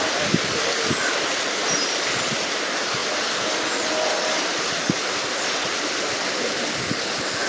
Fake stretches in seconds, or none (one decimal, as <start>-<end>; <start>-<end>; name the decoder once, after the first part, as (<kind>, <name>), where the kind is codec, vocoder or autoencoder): none